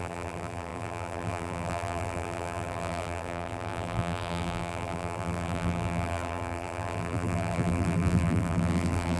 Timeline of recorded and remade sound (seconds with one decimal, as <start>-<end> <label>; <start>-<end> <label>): 0.0-9.2 remade